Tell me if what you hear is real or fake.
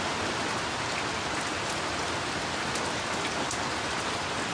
real